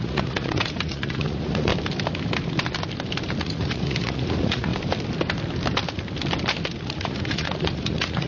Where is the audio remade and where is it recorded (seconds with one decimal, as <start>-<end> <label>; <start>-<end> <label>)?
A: 0.0-1.7 remade; 1.7-3.4 recorded; 3.4-4.7 remade; 4.7-6.8 recorded; 6.8-8.3 remade